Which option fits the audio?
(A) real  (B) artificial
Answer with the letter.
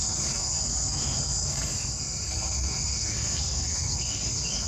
B